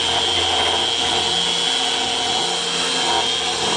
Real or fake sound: real